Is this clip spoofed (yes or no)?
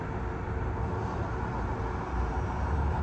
no